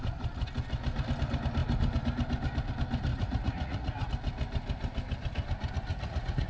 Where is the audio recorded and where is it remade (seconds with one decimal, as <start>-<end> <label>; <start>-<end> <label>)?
0.0-3.1 recorded; 3.1-4.1 remade; 4.1-5.9 recorded; 5.9-6.5 remade